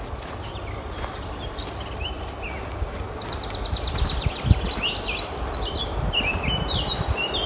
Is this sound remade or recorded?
recorded